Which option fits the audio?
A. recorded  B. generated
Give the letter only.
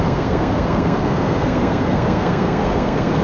B